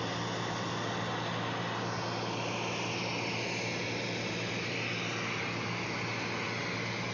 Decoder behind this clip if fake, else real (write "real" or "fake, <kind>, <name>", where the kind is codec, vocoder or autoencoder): real